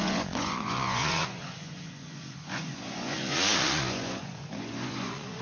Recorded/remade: remade